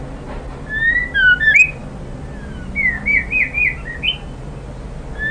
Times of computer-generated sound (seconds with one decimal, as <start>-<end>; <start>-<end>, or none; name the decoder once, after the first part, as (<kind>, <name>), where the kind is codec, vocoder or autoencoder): none